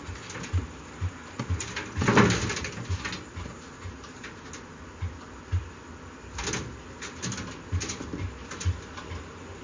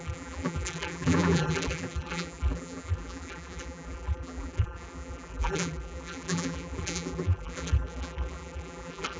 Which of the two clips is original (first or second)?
first